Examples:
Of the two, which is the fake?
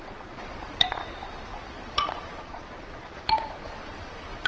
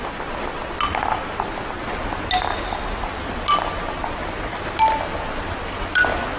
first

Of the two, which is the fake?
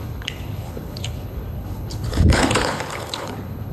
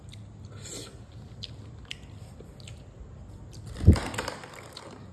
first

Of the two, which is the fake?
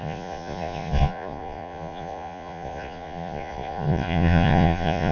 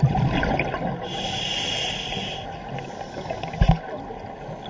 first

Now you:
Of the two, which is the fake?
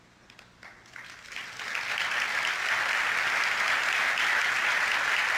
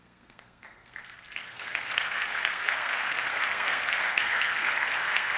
second